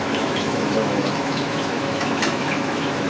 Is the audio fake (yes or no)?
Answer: yes